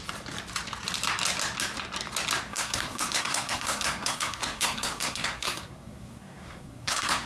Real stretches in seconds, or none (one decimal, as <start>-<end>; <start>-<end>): 0.0-2.5